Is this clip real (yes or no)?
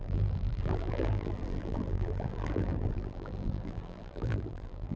no